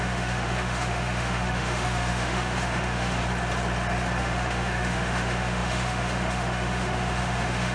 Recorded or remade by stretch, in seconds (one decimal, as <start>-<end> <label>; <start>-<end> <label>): 0.0-3.2 remade; 3.2-4.2 recorded; 4.2-7.7 remade